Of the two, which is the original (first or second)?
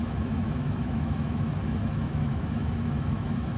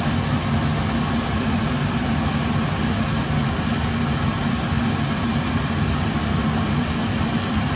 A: second